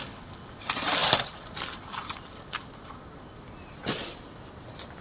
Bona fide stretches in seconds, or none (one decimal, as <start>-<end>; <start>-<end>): 0.0-5.0